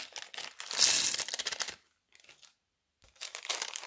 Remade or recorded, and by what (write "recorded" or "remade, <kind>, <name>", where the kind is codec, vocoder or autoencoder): recorded